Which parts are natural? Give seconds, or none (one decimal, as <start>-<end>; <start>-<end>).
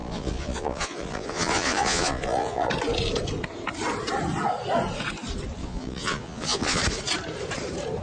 2.7-5.6; 6.8-8.0